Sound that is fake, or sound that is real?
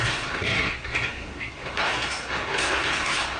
fake